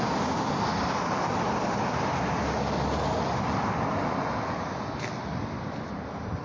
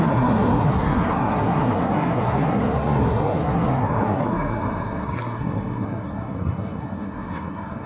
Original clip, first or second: first